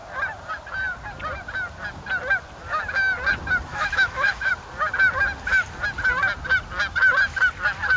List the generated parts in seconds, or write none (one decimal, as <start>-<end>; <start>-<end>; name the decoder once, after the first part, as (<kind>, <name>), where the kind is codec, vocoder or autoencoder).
3.7-4.5 (autoencoder, DAC-VAE)